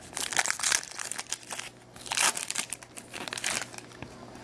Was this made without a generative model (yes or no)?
yes